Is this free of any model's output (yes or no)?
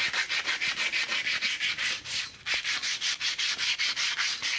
yes